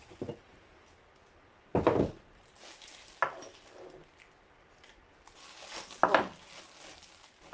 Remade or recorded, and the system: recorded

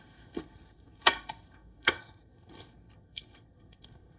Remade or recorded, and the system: remade, codec, SNAC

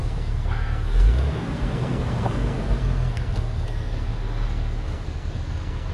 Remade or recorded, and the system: remade, codec, SNAC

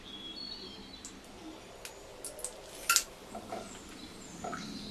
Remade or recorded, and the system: recorded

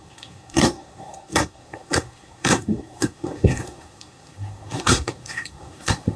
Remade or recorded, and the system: remade, codec, SNAC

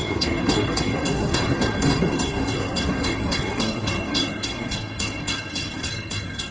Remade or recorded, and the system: remade, codec, SNAC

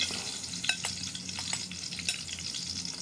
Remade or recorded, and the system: recorded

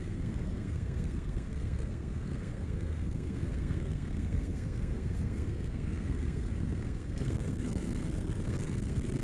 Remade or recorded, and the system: remade, codec, SNAC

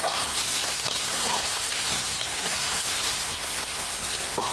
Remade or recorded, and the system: remade, codec, SNAC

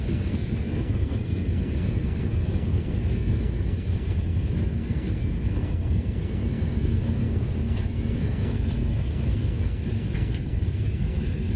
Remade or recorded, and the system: remade, codec, SNAC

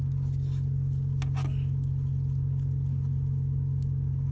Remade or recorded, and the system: recorded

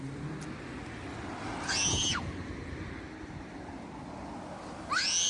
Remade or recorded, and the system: recorded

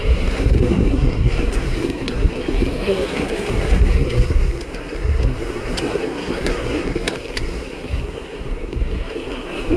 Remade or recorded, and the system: remade, codec, SNAC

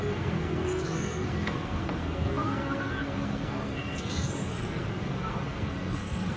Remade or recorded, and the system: remade, codec, SNAC